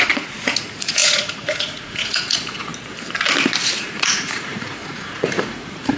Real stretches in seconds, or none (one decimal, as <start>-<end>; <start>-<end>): 2.7-3.8